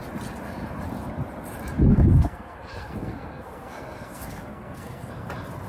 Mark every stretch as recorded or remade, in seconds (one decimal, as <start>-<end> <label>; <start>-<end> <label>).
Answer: 0.0-1.9 recorded; 1.9-5.3 remade; 5.3-5.7 recorded